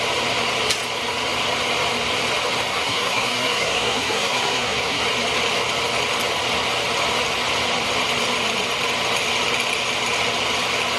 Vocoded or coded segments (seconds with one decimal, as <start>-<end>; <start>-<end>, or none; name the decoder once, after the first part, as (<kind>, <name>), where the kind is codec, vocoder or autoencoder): 2.7-5.0 (codec, SNAC)